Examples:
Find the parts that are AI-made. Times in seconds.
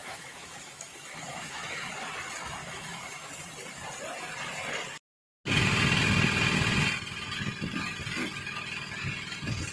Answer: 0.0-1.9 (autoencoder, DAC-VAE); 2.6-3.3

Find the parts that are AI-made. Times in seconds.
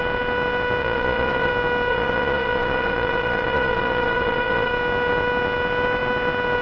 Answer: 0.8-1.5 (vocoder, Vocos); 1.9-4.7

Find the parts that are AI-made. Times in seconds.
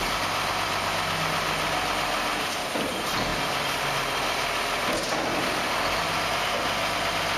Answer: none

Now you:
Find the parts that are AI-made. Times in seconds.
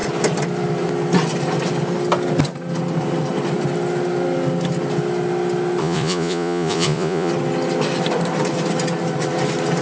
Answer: 5.8-7.3 (vocoder, Vocos)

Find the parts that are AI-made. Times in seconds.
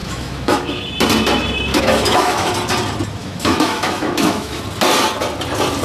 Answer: 0.0-0.9 (autoencoder, DAC-VAE); 1.7-2.5; 3.2-4.6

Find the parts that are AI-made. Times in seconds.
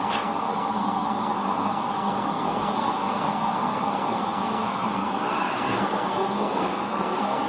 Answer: 0.0-7.5 (codec, SNAC)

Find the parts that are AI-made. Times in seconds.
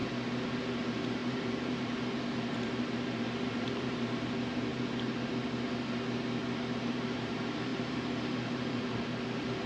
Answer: 0.6-4.7 (vocoder, BigVGAN v2); 6.8-9.7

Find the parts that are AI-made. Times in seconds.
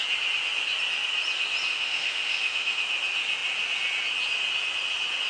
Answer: 1.7-2.8 (autoencoder, DAC-VAE)